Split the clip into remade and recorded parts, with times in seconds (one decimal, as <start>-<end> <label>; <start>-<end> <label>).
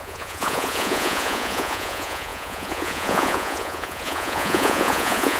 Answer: 0.0-5.4 remade